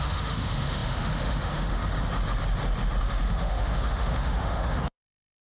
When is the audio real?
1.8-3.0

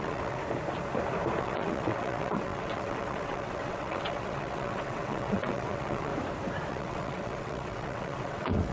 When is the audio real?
0.4-1.4; 6.1-6.7

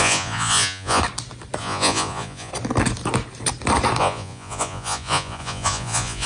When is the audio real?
1.0-1.6; 2.5-4.0

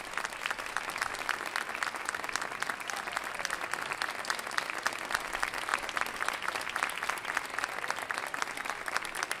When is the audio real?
0.0-9.4

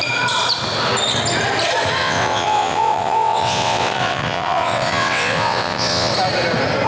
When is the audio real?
0.0-2.0; 6.1-6.9

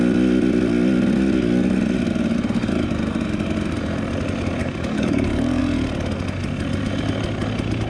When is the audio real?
0.0-4.6; 5.6-7.9

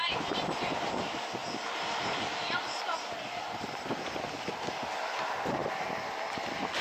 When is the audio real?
0.0-1.4; 2.8-6.8

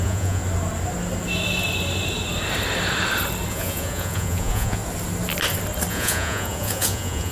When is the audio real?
0.4-3.5; 4.8-5.9